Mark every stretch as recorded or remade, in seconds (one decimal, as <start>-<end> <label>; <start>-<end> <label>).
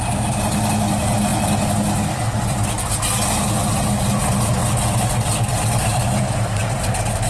0.0-7.3 recorded